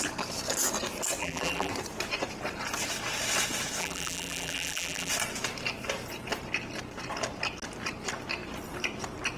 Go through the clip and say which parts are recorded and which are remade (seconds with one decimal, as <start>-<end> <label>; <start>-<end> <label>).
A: 0.0-1.2 recorded; 1.2-1.7 remade; 1.7-3.8 recorded; 3.8-5.1 remade; 5.1-9.4 recorded